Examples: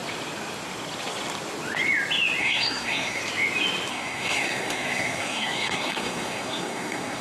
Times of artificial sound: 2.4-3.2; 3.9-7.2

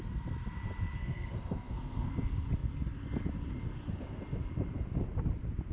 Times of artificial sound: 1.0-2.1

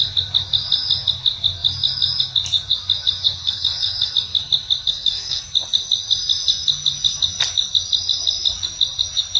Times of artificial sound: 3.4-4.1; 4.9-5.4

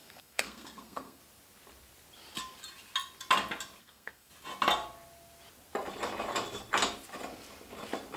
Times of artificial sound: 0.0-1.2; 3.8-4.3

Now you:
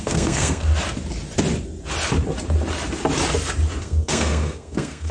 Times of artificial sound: 0.0-0.7; 3.8-5.1

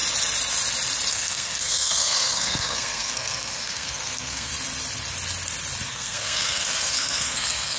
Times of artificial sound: 1.1-4.5; 5.9-7.8